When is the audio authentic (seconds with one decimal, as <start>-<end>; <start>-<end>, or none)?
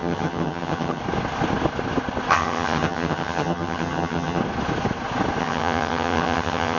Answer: 1.0-2.3; 4.4-5.4